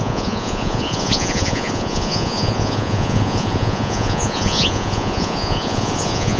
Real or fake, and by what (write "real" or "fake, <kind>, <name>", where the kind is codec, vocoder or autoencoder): fake, vocoder, Vocos